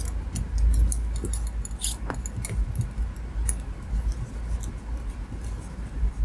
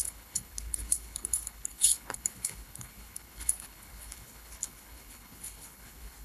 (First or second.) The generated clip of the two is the second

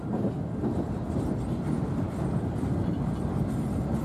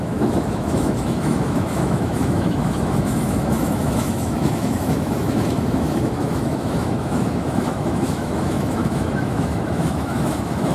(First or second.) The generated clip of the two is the second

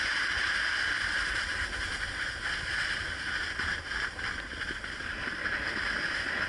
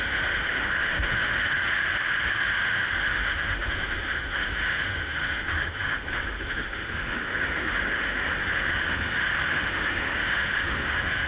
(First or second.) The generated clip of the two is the second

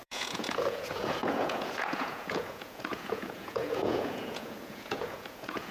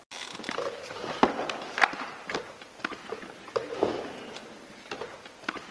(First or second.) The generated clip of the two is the first